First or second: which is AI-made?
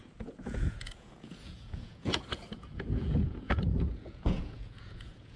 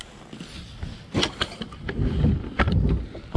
first